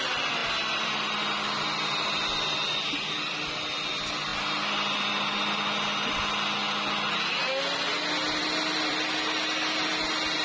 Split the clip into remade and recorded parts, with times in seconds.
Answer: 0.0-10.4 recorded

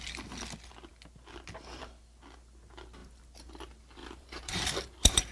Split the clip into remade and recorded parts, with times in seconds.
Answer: 0.0-4.0 recorded; 4.0-5.3 remade

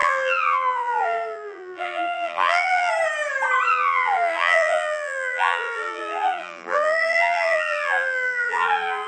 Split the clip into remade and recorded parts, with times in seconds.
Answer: 0.0-2.9 remade; 2.9-3.7 recorded; 3.7-9.1 remade

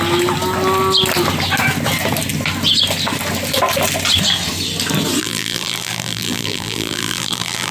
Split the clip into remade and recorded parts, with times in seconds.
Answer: 0.0-5.2 recorded; 5.2-7.7 remade

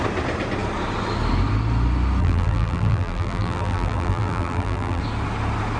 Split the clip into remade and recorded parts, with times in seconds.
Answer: 0.0-2.2 recorded; 2.2-5.0 remade; 5.0-5.8 recorded